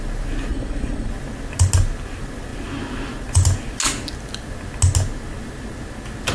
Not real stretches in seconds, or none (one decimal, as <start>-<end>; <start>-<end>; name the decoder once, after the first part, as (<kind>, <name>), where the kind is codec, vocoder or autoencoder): 0.5-1.1 (vocoder, Vocos)